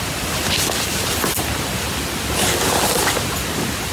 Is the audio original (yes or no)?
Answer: yes